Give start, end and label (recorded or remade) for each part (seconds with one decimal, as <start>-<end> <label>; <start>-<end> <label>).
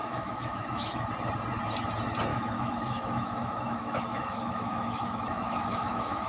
0.0-1.1 remade; 1.1-2.3 recorded; 2.3-6.3 remade